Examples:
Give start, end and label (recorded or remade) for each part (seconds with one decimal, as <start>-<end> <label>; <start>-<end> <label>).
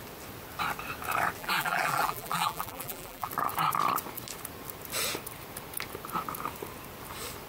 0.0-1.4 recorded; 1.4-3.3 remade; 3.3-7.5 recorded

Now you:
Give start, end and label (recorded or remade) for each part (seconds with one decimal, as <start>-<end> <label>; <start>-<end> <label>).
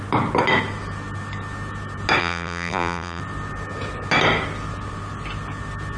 0.0-2.2 recorded; 2.2-3.2 remade; 3.2-6.0 recorded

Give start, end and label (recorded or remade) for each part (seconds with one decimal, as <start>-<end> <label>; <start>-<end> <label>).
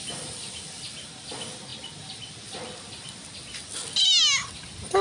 0.0-5.0 recorded